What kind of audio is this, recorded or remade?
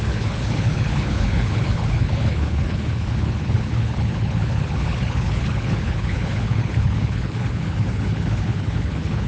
remade